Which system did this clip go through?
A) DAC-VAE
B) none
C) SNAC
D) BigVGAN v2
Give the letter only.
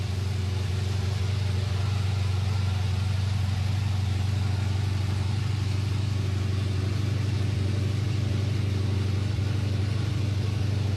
B